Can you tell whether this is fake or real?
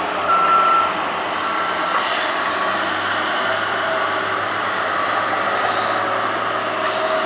real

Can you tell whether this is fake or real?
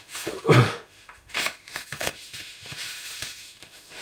fake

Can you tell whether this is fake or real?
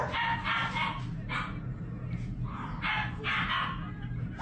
real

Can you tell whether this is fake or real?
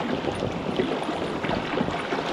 real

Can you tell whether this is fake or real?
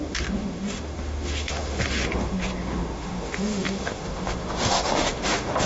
fake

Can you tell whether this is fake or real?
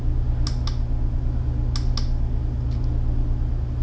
real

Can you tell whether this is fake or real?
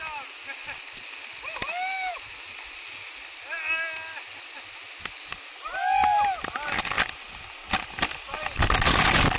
real